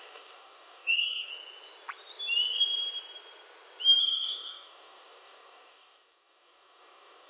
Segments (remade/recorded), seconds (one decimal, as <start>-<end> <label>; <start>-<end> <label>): 0.0-1.3 remade; 1.3-4.0 recorded; 4.0-7.3 remade